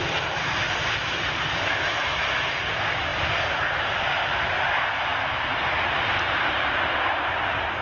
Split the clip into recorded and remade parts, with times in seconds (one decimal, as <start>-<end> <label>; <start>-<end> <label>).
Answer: 0.0-7.8 recorded